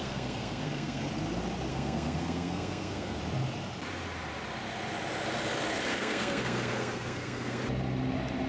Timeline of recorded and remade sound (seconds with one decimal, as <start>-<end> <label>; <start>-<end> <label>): 0.0-1.1 remade; 1.1-1.7 recorded; 1.7-3.2 remade; 3.2-5.9 recorded; 5.9-7.6 remade; 7.6-8.5 recorded